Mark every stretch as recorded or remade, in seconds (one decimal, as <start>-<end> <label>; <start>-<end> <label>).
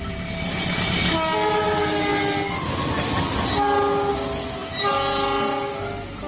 0.0-6.3 recorded